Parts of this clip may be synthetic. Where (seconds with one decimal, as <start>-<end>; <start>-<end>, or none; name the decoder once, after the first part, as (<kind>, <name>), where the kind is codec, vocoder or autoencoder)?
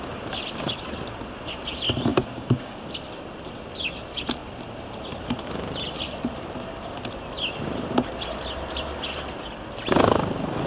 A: 2.1-2.9 (codec, DAC)